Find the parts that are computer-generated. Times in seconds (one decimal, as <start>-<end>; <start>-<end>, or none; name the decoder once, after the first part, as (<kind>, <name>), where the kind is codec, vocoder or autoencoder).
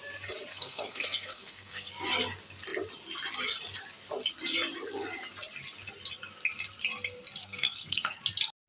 0.5-1.9 (codec, SNAC); 7.4-8.2